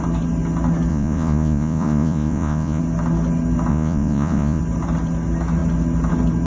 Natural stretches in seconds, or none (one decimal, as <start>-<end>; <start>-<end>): 0.0-0.9; 2.8-3.7; 4.6-6.5